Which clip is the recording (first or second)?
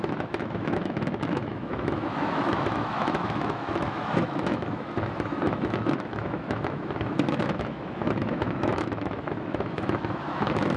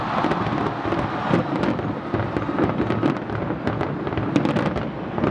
second